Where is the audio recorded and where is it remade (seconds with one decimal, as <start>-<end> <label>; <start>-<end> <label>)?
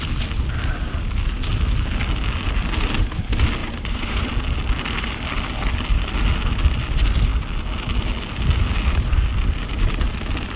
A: 0.0-3.6 recorded; 3.6-4.3 remade; 4.3-10.6 recorded